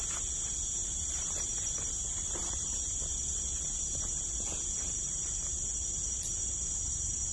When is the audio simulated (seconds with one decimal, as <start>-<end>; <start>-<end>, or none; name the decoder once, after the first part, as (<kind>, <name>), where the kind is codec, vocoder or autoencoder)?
0.8-2.5 (vocoder, BigVGAN v2); 3.1-4.1